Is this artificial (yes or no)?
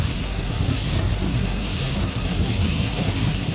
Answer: yes